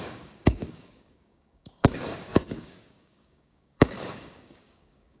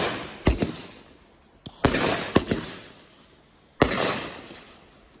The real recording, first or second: second